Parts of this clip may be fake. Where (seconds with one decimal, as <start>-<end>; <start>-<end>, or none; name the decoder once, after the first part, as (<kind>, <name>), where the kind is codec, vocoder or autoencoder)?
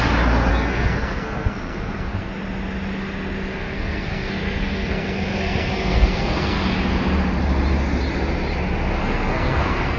0.5-2.3 (codec, SNAC); 3.5-6.6; 9.0-10.0